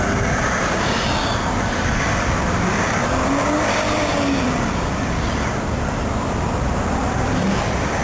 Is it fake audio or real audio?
fake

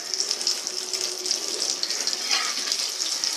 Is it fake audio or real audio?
real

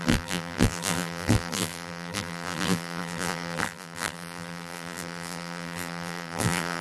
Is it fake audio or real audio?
fake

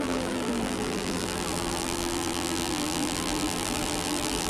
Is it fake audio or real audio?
fake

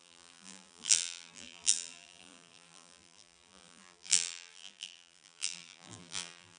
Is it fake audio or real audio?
fake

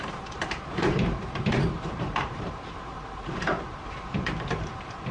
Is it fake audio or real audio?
fake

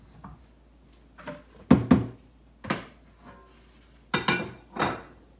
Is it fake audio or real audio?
real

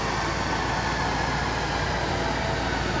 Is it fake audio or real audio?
real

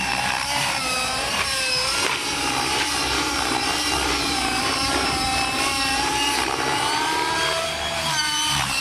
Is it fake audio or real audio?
fake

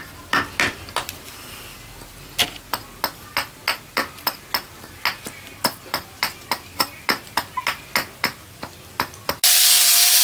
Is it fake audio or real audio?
real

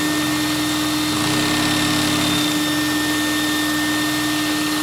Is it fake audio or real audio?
real